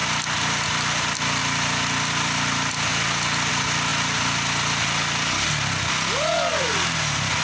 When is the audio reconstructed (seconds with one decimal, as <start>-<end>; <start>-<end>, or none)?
none